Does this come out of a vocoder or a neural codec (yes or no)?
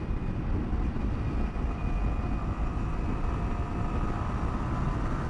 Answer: no